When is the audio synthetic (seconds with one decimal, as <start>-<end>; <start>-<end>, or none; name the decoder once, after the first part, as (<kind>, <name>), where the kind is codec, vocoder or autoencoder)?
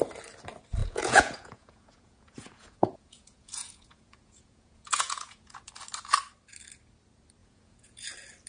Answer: 0.8-5.7 (vocoder, Vocos); 7.4-8.1